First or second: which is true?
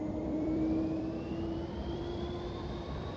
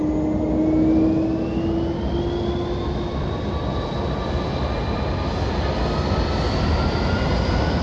second